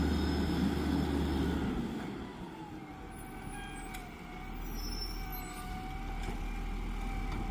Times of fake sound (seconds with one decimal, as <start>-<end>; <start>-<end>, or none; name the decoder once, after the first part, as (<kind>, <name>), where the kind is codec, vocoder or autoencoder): none